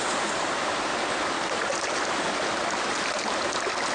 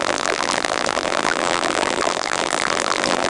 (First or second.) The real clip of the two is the first